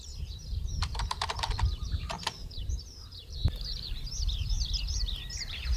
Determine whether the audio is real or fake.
fake